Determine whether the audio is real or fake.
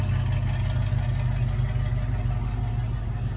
real